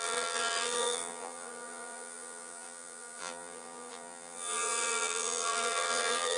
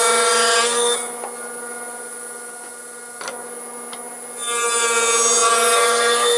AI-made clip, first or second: first